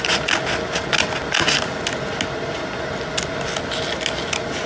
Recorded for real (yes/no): yes